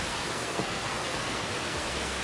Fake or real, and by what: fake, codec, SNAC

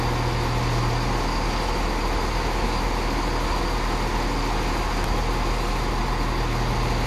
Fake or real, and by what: real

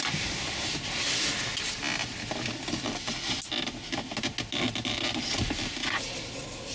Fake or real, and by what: real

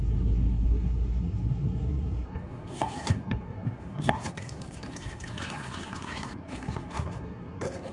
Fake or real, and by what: fake, codec, SNAC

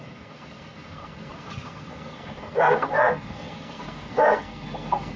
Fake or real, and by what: fake, codec, SNAC